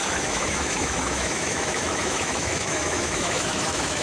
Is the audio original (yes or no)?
no